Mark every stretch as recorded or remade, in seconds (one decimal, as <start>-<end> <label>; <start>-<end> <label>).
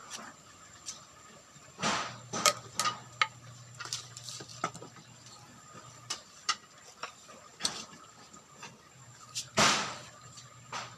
0.0-2.8 remade; 2.8-4.5 recorded; 4.5-8.8 remade; 8.8-11.0 recorded